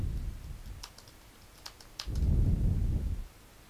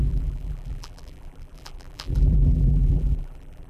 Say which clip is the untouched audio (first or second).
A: first